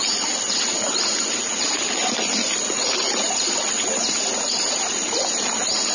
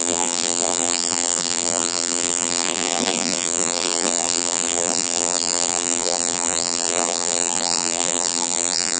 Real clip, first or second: first